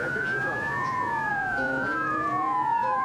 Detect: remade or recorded remade